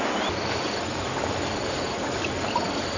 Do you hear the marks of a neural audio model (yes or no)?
no